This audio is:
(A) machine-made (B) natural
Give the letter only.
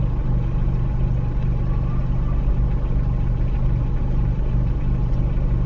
B